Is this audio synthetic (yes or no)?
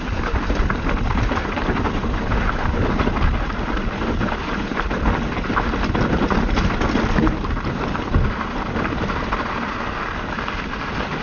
no